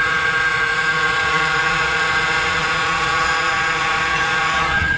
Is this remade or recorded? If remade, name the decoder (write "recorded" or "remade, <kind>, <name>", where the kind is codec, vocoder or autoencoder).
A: remade, vocoder, Vocos